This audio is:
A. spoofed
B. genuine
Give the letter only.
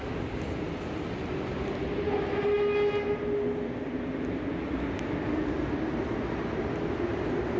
B